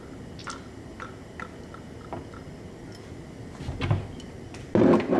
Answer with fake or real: real